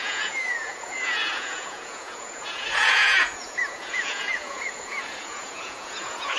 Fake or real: fake